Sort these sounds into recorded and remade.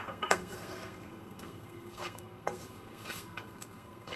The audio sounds remade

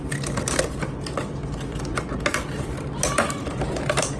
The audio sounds recorded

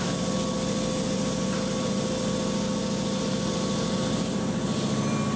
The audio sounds recorded